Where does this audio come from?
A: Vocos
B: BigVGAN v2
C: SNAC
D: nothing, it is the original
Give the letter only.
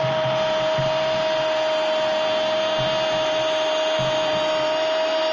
D